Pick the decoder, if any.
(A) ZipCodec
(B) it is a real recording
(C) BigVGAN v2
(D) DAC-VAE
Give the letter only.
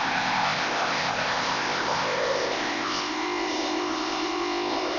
A